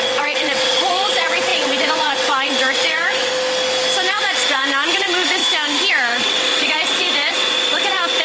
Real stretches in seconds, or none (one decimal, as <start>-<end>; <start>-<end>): 3.3-4.1; 5.4-5.9